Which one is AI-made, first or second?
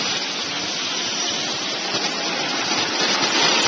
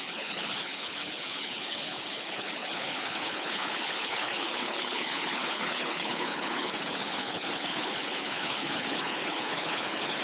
second